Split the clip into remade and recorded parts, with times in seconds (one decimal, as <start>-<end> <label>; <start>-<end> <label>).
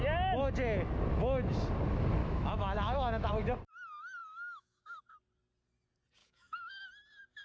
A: 0.0-2.2 recorded; 2.2-3.3 remade; 3.3-4.2 recorded; 4.2-5.0 remade; 5.0-6.2 recorded; 6.2-6.7 remade; 6.7-7.4 recorded